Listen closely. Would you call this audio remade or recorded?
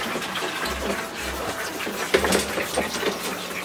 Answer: recorded